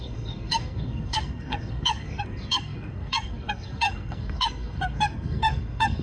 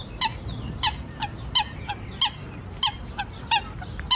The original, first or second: second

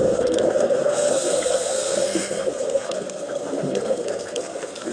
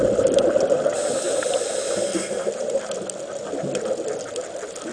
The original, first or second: second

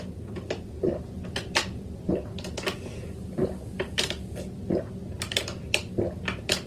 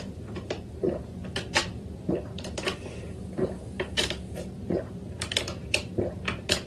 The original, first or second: first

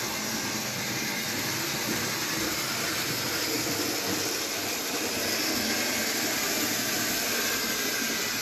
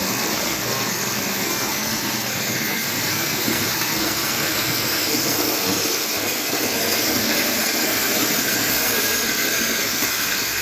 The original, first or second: first